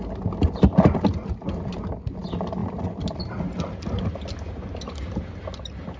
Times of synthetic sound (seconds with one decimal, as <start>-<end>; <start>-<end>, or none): none